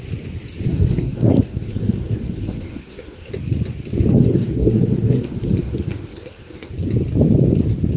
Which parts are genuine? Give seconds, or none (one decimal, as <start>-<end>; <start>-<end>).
0.0-0.7; 3.3-4.1; 6.7-8.0